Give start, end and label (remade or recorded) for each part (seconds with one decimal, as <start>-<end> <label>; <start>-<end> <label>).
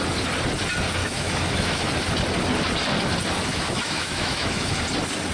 0.0-1.0 recorded; 1.0-1.9 remade; 1.9-3.5 recorded; 3.5-4.8 remade; 4.8-5.3 recorded